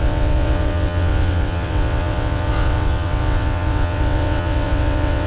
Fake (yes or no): yes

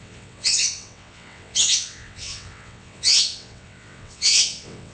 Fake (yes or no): yes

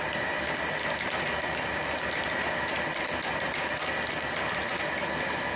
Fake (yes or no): no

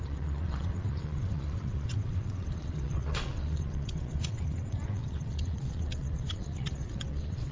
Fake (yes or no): yes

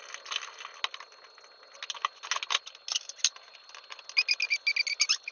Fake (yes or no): no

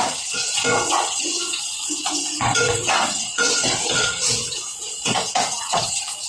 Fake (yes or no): yes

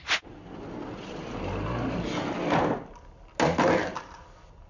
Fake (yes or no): no